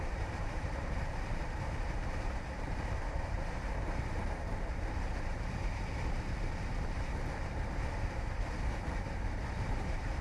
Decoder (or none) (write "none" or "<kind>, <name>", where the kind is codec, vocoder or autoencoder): vocoder, BigVGAN v2